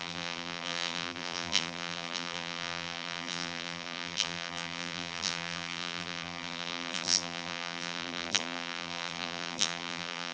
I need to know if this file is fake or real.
fake